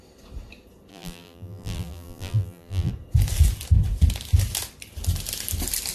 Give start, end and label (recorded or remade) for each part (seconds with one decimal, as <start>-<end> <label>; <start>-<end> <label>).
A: 0.0-0.9 recorded; 0.9-2.9 remade; 2.9-5.9 recorded